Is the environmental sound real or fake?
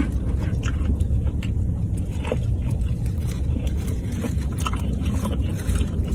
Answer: fake